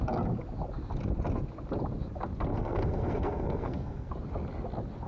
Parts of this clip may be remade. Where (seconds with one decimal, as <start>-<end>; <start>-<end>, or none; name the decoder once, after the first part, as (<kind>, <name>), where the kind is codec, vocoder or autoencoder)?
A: 2.5-4.1 (codec, SNAC)